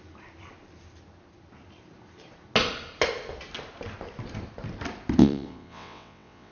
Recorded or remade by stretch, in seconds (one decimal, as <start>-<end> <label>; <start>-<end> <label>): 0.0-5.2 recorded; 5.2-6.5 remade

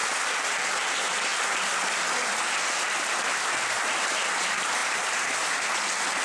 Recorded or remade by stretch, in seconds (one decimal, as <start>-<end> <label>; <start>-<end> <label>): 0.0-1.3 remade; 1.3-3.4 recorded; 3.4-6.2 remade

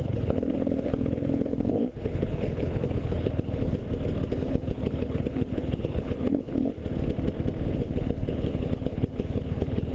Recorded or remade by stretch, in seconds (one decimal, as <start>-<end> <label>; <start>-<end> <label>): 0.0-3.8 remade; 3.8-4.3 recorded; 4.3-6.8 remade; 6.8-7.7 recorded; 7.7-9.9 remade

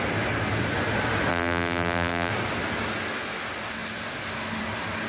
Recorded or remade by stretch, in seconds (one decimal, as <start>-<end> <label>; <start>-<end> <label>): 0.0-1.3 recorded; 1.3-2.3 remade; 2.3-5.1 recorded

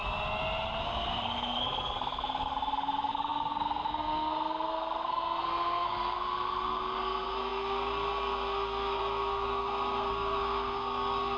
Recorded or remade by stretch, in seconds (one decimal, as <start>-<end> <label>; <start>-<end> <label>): 0.0-0.8 recorded; 0.8-11.4 remade

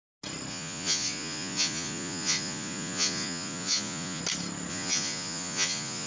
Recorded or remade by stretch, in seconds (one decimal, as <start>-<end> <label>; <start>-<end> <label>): 0.0-0.5 recorded; 0.5-4.2 remade; 4.2-4.7 recorded; 4.7-6.1 remade

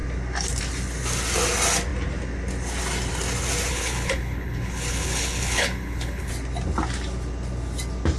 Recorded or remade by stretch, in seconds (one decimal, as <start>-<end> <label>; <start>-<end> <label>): 0.0-3.7 recorded; 3.7-6.3 remade; 6.3-8.2 recorded